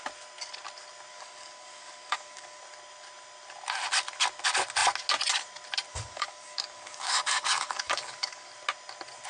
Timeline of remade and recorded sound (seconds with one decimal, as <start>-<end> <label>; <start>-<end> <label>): 0.0-1.1 recorded; 1.1-2.6 remade; 2.6-5.9 recorded; 5.9-8.5 remade; 8.5-9.3 recorded